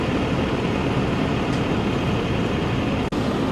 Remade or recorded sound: recorded